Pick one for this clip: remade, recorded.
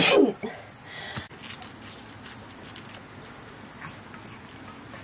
recorded